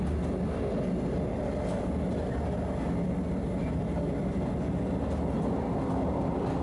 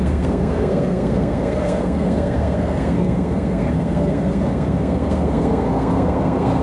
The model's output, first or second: second